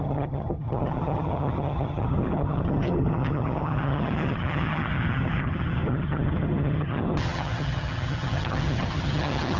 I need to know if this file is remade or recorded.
remade